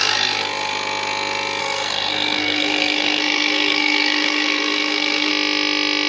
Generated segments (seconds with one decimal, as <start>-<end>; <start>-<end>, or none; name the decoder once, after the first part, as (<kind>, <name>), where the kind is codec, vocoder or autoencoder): 1.6-5.3 (codec, SNAC)